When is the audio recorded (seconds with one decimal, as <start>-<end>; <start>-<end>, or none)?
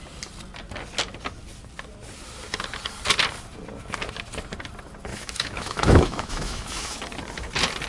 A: 0.0-5.1; 7.0-7.9